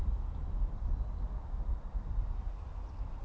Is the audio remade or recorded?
recorded